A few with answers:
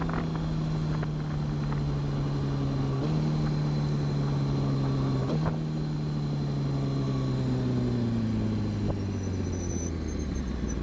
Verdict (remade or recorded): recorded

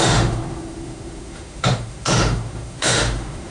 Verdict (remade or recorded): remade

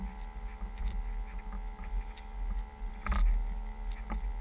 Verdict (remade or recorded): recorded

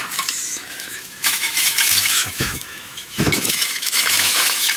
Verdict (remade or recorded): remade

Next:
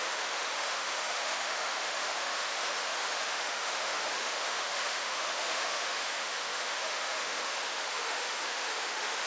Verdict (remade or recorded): remade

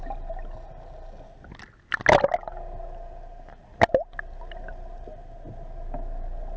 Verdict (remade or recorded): recorded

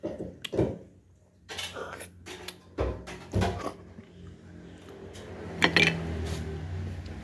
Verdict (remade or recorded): recorded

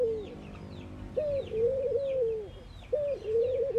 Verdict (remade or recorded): recorded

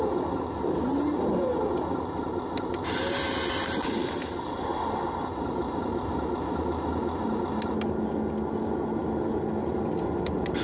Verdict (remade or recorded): recorded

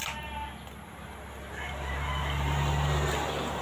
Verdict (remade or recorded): recorded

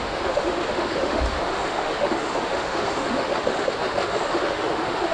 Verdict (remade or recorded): remade